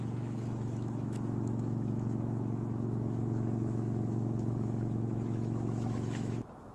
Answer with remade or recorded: remade